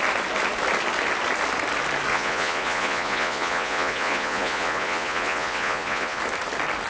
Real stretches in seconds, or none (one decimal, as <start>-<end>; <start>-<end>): 0.0-2.1; 6.2-6.9